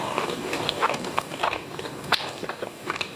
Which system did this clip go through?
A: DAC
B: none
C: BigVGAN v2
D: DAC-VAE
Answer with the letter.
A